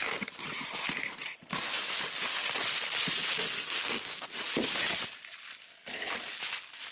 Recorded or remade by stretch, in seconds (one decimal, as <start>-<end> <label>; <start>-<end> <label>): 0.0-3.6 recorded; 3.6-4.3 remade; 4.3-6.9 recorded